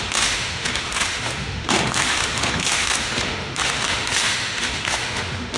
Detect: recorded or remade remade